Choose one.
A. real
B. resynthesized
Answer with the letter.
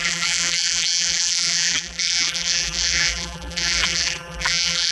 B